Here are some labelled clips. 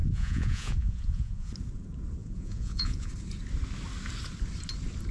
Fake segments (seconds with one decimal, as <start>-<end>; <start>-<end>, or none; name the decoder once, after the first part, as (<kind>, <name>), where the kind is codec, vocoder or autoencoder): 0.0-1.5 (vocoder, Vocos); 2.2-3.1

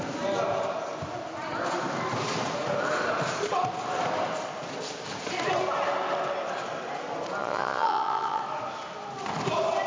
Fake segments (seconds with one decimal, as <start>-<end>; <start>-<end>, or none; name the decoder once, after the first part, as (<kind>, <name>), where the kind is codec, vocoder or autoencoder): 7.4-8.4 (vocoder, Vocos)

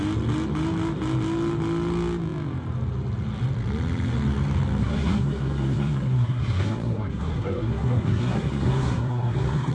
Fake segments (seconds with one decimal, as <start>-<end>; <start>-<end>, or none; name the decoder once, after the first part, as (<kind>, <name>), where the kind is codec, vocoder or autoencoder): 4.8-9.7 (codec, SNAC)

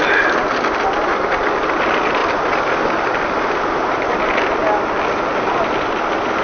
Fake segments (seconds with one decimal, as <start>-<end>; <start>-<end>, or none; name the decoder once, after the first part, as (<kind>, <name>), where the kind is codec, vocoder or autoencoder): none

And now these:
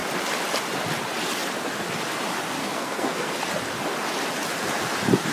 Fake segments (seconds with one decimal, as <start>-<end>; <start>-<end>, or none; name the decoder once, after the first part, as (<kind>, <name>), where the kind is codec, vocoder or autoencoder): 2.6-3.3 (codec, SNAC)

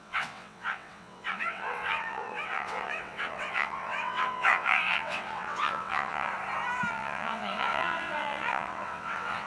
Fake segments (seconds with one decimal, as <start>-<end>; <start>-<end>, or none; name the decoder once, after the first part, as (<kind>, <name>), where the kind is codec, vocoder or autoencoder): 0.0-6.3 (vocoder, WaveNeXt); 6.9-9.5

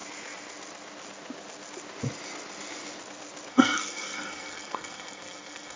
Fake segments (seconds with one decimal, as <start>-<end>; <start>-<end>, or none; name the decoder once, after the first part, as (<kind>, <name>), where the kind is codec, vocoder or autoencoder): 3.5-5.8 (codec, SNAC)